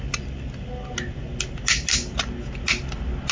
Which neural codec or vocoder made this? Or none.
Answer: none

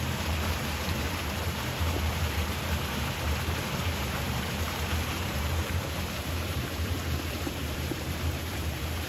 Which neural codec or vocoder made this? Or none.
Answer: vocoder, BigVGAN v2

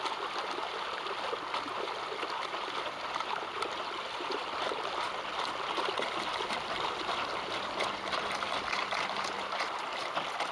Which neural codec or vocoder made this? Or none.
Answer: none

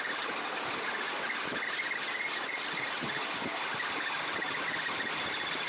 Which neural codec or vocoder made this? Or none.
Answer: none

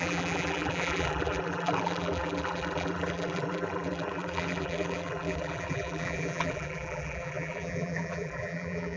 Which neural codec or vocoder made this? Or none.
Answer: vocoder, BigVGAN v2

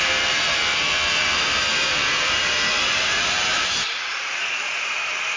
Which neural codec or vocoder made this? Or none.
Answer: vocoder, BigVGAN v2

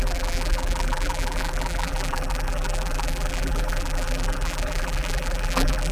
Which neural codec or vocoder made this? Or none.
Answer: vocoder, BigVGAN v2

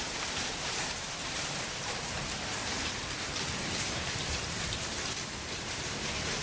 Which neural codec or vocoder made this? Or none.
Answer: vocoder, BigVGAN v2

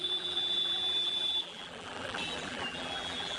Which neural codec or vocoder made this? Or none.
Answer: vocoder, BigVGAN v2